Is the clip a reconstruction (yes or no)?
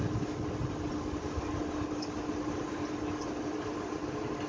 no